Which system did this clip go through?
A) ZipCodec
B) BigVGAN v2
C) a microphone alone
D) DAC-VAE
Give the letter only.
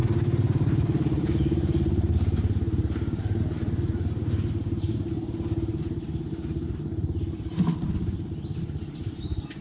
B